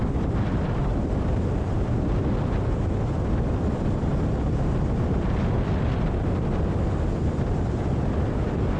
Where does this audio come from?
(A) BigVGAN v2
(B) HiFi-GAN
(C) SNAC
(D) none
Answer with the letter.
A